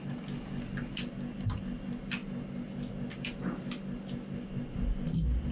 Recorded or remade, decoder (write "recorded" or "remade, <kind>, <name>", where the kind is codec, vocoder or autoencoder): recorded